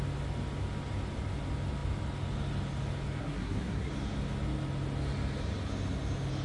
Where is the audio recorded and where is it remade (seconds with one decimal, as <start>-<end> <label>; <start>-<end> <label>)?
0.0-3.2 recorded; 3.2-3.9 remade; 3.9-6.4 recorded